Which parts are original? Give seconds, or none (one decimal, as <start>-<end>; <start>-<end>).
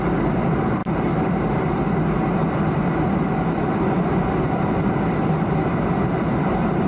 0.0-6.9